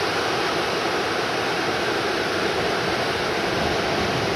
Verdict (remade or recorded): remade